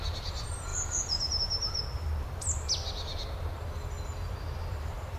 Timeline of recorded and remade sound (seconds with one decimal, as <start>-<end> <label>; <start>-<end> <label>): 0.0-2.1 remade; 2.1-4.7 recorded; 4.7-5.2 remade